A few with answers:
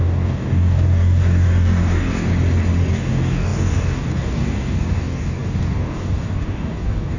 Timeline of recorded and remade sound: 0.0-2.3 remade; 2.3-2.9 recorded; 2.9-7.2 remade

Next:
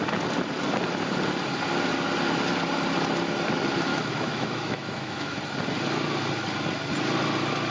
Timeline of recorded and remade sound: 0.0-3.9 recorded; 3.9-5.4 remade; 5.4-7.7 recorded

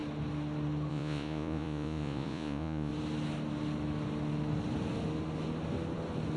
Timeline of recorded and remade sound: 0.0-0.9 recorded; 0.9-2.9 remade; 2.9-6.4 recorded

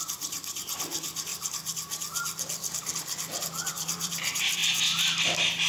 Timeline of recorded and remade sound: 0.0-1.3 remade; 1.3-3.7 recorded; 3.7-4.6 remade; 4.6-5.7 recorded

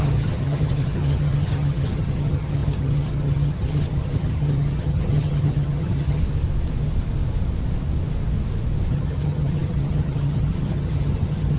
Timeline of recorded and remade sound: 0.0-6.2 remade; 6.2-8.9 recorded; 8.9-11.6 remade

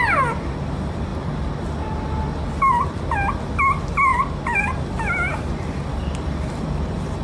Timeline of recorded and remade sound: 0.0-7.2 recorded